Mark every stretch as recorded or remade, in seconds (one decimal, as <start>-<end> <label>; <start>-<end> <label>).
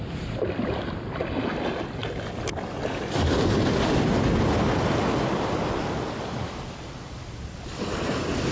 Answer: 0.0-8.5 recorded